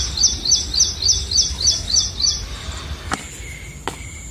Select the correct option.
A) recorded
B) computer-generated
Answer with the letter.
A